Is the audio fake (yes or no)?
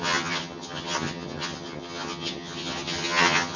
yes